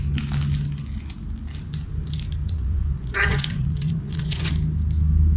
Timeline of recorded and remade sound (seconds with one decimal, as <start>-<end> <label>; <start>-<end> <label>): 0.0-2.4 recorded; 2.4-4.5 remade; 4.5-5.4 recorded